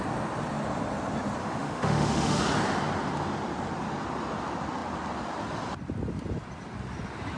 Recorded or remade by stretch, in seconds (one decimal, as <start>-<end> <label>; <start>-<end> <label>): 0.0-1.4 recorded; 1.4-2.4 remade; 2.4-7.4 recorded